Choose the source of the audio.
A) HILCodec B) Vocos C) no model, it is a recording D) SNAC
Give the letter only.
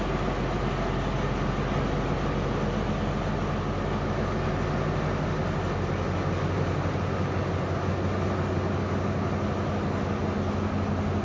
C